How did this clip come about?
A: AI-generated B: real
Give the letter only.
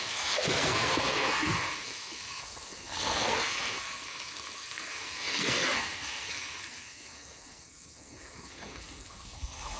A